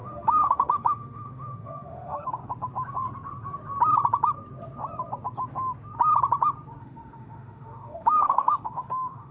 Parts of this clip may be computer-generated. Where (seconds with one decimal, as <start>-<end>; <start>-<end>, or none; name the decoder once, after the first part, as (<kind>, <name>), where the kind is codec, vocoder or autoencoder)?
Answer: 0.0-2.4 (autoencoder, DAC-VAE); 6.8-9.3